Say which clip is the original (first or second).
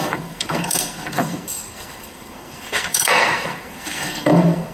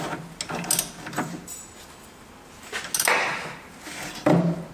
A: second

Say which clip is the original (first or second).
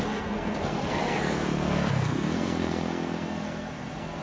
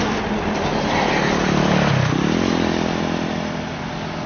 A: second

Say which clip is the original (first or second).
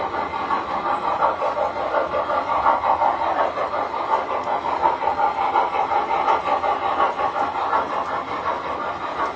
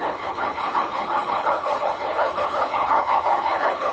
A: first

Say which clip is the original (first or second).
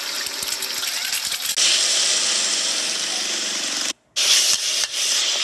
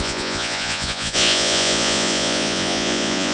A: first